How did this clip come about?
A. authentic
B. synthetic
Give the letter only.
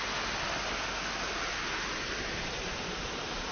A